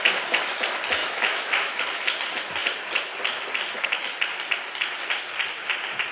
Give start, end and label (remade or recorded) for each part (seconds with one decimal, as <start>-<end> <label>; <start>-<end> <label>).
0.0-1.0 recorded; 1.0-1.8 remade; 1.8-6.1 recorded